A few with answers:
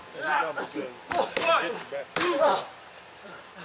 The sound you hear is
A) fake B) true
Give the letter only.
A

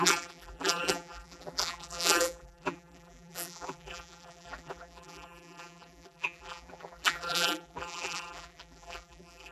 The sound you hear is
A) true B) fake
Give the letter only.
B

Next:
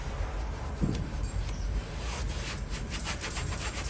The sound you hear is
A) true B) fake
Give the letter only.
B